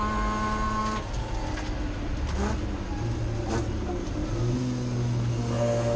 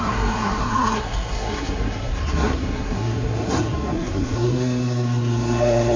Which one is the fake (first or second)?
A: second